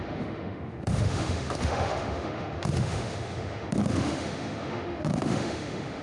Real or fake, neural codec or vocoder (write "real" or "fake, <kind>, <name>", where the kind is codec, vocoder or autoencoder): fake, autoencoder, DAC-VAE